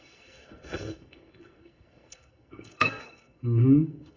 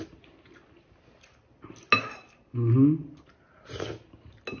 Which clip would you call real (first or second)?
second